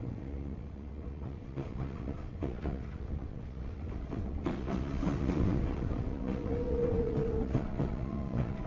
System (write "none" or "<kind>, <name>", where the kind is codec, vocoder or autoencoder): vocoder, WaveNeXt